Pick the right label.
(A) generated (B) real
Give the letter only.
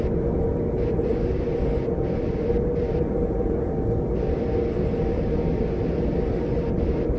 B